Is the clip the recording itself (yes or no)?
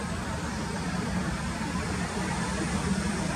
yes